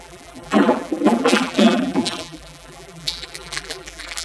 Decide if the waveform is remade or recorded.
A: remade